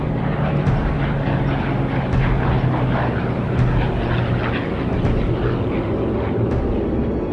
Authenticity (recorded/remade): recorded